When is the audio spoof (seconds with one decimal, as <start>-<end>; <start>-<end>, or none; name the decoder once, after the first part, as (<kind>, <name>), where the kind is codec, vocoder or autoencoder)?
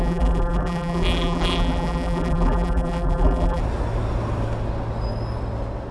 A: 0.0-3.6 (vocoder, BigVGAN v2)